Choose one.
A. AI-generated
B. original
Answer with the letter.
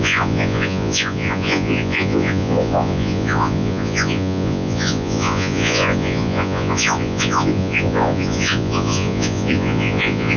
A